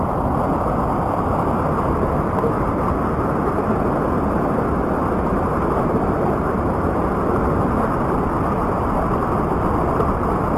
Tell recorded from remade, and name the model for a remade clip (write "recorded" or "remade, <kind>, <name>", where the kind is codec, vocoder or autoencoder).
recorded